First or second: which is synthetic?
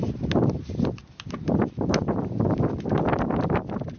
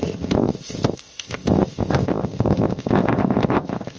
second